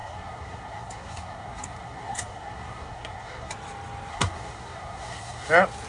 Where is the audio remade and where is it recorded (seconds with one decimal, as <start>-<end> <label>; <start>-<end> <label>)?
0.0-3.5 remade; 3.5-4.1 recorded; 4.1-5.5 remade; 5.5-5.9 recorded